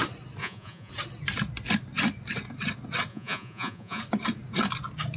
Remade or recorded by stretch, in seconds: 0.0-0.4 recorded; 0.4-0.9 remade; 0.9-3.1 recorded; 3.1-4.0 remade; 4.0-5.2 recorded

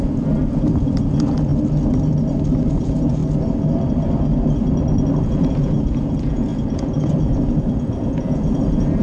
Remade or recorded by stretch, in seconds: 0.0-1.5 remade; 1.5-2.7 recorded; 2.7-3.2 remade; 3.2-5.2 recorded; 5.2-9.0 remade

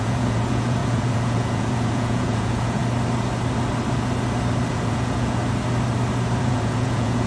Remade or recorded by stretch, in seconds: 0.0-2.8 remade; 2.8-4.7 recorded; 4.7-5.4 remade; 5.4-6.4 recorded; 6.4-7.3 remade

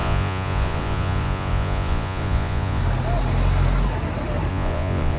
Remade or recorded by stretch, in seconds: 0.0-2.8 remade; 2.8-4.5 recorded; 4.5-5.2 remade